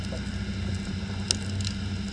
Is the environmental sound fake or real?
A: real